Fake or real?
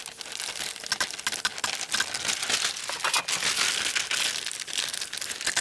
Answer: real